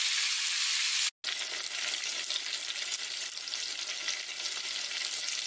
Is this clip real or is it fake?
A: real